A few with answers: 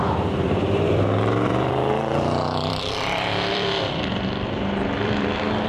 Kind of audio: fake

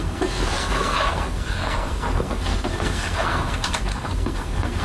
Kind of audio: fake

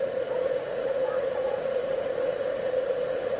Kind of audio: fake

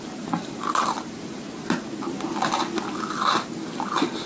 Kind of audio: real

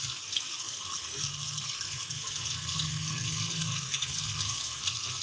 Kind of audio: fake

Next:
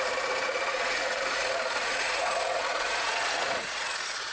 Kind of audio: fake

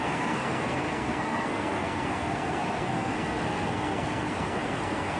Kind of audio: fake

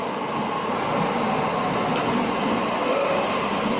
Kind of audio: real